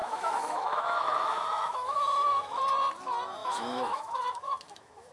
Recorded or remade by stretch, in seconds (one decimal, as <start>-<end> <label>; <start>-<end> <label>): 0.0-2.6 remade; 2.6-3.4 recorded; 3.4-5.1 remade